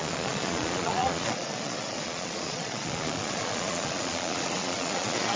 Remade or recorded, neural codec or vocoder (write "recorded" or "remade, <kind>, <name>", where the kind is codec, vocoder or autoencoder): remade, vocoder, Vocos